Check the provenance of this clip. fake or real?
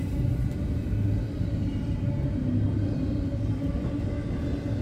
real